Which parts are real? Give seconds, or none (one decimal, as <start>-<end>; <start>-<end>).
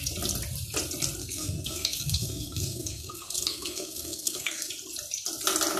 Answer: 0.0-1.2; 4.7-5.8